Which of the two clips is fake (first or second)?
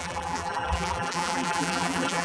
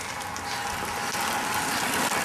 first